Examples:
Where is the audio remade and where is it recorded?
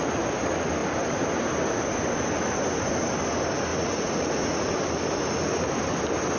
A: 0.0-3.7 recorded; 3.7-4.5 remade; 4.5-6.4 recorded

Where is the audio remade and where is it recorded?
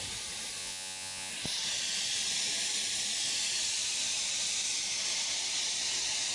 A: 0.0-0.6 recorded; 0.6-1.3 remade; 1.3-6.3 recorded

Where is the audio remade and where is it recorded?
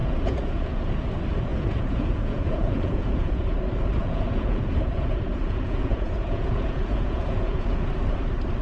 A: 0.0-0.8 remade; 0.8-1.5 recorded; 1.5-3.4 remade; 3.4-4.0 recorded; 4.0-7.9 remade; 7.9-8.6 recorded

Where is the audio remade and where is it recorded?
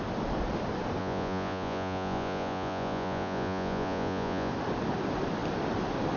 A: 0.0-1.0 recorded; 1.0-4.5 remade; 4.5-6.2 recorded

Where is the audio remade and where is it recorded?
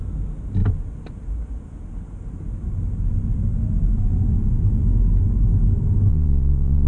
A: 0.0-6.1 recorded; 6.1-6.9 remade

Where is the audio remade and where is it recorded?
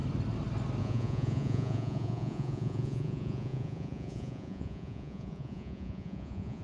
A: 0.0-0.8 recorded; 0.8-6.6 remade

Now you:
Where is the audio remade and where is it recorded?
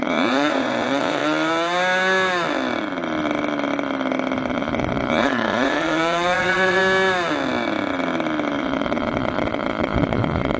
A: 0.0-1.2 remade; 1.2-4.5 recorded; 4.5-6.8 remade; 6.8-8.6 recorded; 8.6-10.6 remade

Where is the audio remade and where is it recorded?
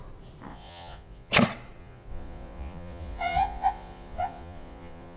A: 0.0-0.5 recorded; 0.5-1.3 remade; 1.3-1.8 recorded; 1.8-5.2 remade